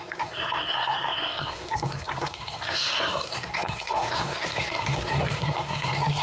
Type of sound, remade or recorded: remade